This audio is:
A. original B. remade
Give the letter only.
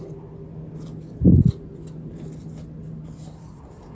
A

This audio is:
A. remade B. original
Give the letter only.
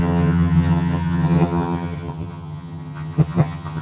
A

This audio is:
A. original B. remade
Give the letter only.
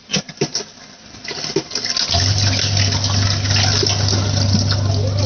A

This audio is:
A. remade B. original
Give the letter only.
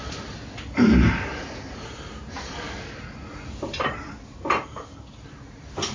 B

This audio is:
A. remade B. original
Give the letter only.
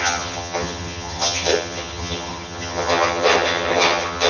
A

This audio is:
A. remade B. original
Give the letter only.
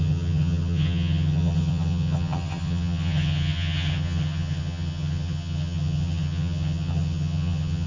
A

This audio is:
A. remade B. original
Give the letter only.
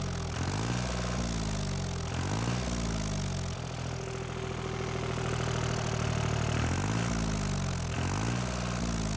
B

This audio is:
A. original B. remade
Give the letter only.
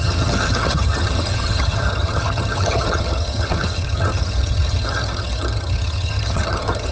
B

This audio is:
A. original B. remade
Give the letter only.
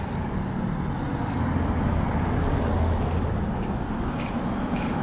A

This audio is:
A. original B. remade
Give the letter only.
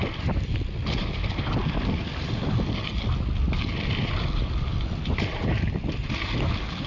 A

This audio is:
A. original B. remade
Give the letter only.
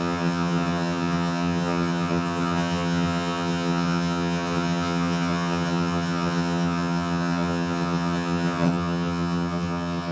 B